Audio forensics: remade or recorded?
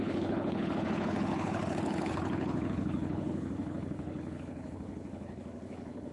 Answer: remade